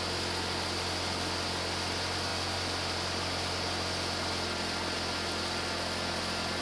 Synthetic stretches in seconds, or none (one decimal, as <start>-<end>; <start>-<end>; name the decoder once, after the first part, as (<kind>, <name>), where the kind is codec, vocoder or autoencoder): none